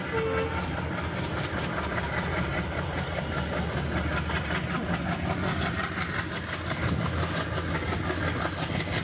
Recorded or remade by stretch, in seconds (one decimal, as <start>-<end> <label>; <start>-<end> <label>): 0.0-9.0 recorded